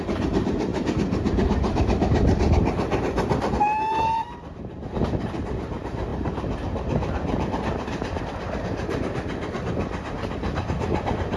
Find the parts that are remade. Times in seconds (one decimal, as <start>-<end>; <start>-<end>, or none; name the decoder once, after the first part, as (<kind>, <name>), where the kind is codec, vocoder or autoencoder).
6.1-8.2 (vocoder, BigVGAN v2)